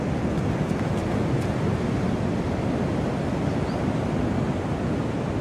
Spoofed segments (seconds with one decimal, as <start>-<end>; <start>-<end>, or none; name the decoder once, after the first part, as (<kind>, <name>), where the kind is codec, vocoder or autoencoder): none